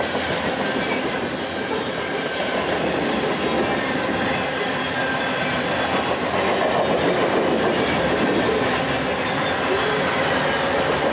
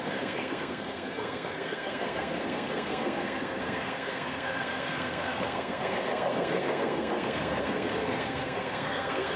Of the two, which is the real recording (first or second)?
first